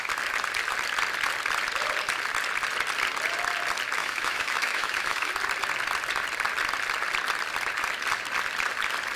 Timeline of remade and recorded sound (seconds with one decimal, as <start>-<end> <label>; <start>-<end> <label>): 0.0-4.0 recorded; 4.0-5.3 remade; 5.3-9.2 recorded